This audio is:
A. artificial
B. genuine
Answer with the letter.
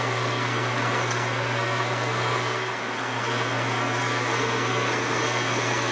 A